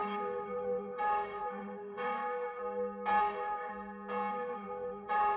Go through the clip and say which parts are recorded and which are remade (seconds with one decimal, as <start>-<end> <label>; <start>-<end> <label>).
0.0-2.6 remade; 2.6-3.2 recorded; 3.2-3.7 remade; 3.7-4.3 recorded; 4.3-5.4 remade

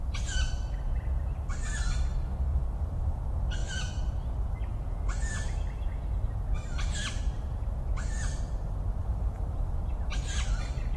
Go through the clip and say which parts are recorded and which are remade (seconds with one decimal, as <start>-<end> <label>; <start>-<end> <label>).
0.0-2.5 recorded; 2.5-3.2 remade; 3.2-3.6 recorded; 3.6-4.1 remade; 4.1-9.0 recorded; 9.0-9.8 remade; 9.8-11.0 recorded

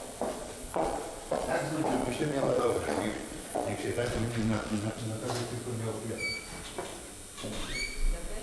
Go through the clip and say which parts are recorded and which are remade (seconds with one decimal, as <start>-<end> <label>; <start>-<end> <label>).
0.0-0.4 recorded; 0.4-1.5 remade; 1.5-2.0 recorded; 2.0-5.0 remade; 5.0-8.4 recorded

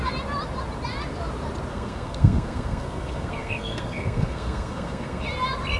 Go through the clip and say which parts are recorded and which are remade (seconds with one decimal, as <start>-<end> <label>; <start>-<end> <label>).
0.0-1.7 recorded; 1.7-5.2 remade; 5.2-5.8 recorded

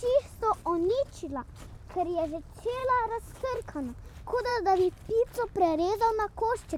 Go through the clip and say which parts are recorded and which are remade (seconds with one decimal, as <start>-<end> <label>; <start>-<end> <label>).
0.0-2.8 recorded; 2.8-3.6 remade; 3.6-6.8 recorded